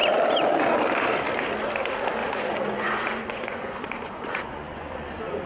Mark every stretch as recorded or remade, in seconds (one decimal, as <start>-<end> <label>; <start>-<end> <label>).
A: 0.0-2.2 recorded; 2.2-5.5 remade